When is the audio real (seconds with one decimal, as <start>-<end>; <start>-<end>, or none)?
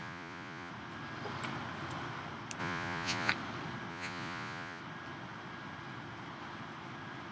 0.7-2.6; 3.3-3.9; 4.8-7.3